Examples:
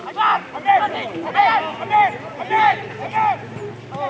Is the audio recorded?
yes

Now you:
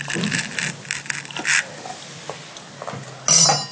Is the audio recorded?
yes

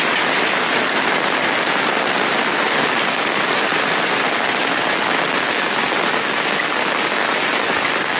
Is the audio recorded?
yes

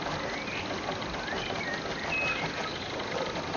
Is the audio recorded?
yes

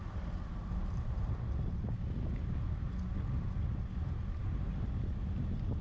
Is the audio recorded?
yes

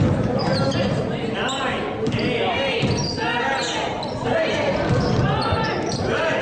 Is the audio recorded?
yes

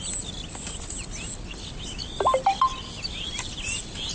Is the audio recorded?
yes